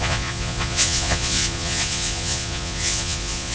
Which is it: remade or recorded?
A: remade